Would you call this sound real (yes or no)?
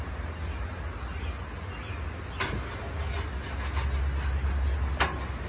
yes